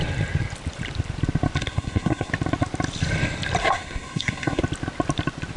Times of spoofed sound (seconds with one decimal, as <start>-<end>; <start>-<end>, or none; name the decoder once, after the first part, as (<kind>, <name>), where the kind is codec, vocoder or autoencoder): 1.6-2.3 (codec, SNAC); 3.6-4.6